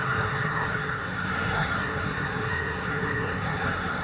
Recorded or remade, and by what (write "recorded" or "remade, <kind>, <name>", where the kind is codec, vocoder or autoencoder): remade, codec, SNAC